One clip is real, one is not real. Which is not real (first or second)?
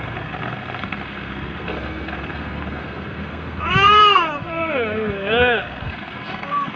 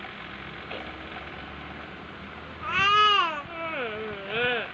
first